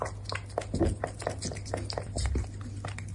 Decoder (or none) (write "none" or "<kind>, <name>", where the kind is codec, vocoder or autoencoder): none